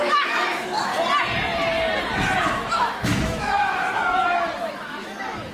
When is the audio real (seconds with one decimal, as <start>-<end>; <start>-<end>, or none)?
0.9-2.4